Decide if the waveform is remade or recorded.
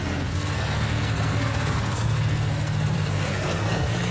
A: remade